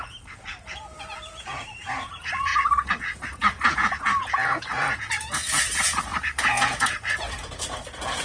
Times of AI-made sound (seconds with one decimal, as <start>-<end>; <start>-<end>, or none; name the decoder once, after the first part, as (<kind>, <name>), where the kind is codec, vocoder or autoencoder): 0.0-8.2 (vocoder, Vocos)